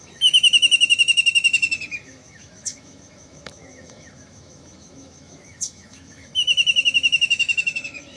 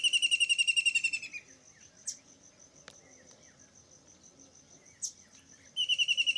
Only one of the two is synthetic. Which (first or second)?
first